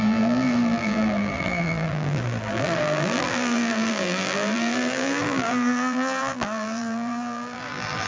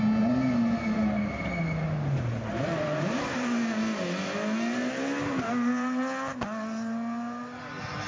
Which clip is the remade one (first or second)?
first